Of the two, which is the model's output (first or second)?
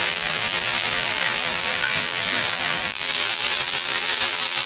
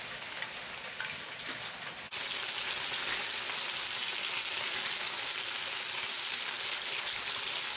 first